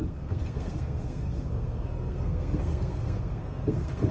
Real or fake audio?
fake